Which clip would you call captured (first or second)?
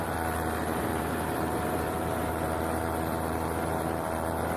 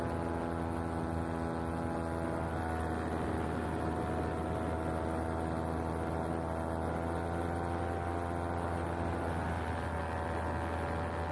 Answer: second